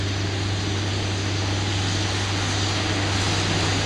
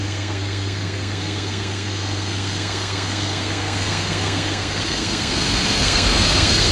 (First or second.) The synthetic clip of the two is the second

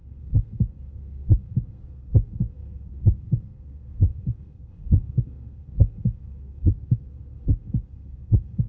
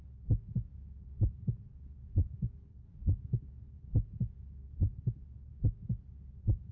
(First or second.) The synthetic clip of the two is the first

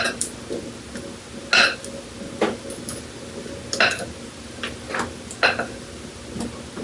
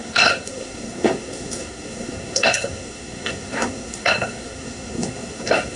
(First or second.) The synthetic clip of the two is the second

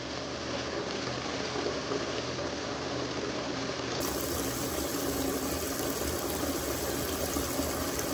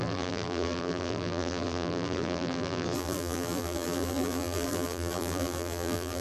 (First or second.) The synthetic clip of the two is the second